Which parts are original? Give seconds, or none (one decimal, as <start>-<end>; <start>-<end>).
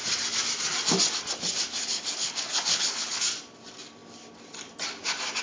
0.0-1.8; 3.2-5.4